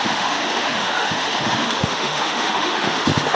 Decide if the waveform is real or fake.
fake